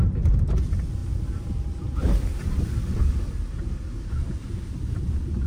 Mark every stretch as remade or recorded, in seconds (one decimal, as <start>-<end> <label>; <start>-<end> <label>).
0.0-2.4 remade; 2.4-3.9 recorded; 3.9-5.5 remade